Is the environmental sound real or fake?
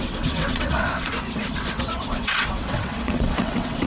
fake